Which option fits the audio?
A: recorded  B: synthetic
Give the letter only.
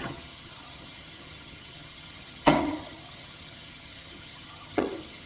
B